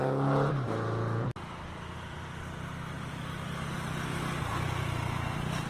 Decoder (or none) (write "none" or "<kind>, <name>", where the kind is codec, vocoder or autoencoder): none